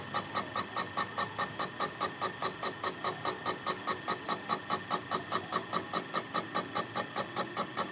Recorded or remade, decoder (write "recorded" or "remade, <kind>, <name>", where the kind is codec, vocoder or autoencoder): recorded